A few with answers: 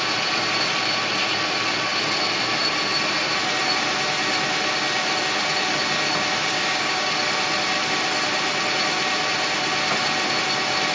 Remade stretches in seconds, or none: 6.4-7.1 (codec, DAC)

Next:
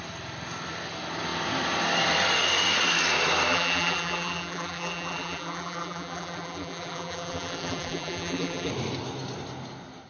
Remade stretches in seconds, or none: 3.5-8.7 (vocoder, BigVGAN v2)

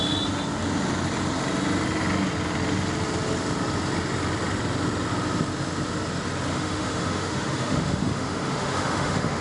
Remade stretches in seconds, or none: 6.5-9.4 (autoencoder, DAC-VAE)

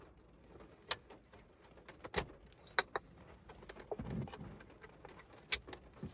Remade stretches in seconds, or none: none

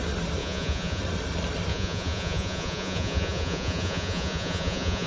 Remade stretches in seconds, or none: 0.4-1.0 (vocoder, Vocos); 1.7-5.1

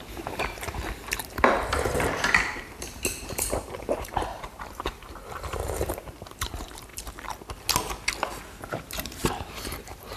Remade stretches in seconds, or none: 0.0-6.9 (vocoder, BigVGAN v2); 8.7-10.2

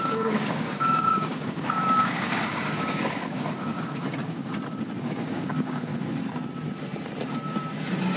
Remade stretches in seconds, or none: 0.0-4.4 (codec, DAC); 5.0-5.9

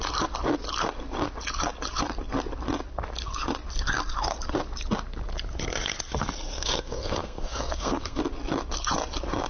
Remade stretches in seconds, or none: 6.5-8.2 (codec, SNAC)